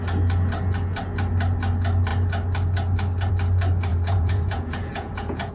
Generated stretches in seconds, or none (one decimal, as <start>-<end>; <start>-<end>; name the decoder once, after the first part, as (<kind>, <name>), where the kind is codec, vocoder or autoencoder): 3.9-5.5 (vocoder, Vocos)